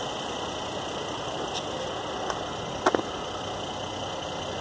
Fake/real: real